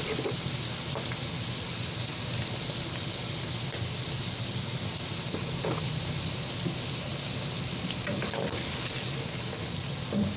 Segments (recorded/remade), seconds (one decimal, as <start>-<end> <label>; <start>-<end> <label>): 0.0-10.4 recorded